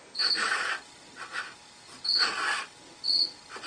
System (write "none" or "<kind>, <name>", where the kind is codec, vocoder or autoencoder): none